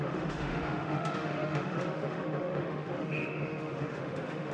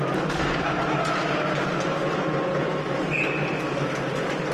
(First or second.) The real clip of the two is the second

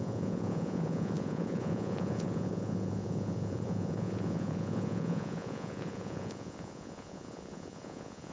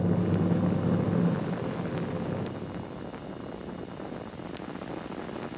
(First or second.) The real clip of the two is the second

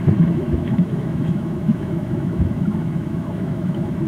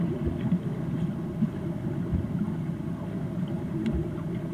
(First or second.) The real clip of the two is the second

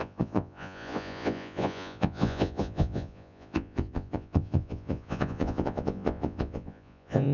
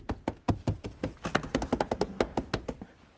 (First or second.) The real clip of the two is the second